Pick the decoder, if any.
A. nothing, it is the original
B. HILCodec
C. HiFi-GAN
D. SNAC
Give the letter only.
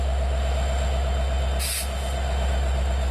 A